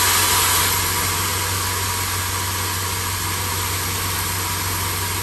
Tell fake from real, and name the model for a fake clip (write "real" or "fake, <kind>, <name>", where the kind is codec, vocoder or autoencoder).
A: real